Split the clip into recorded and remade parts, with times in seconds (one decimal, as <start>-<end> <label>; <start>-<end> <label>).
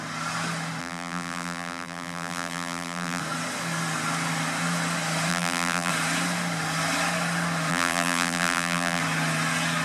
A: 0.0-0.8 recorded; 0.8-3.2 remade; 3.2-5.3 recorded; 5.3-5.9 remade; 5.9-7.7 recorded; 7.7-9.0 remade; 9.0-9.8 recorded